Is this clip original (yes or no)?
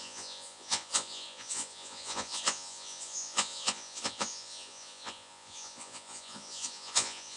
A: no